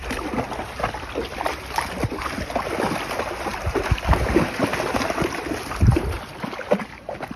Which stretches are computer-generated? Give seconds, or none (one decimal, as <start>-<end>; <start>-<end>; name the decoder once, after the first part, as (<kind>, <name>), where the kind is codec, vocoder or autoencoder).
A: 3.5-4.0 (vocoder, BigVGAN v2)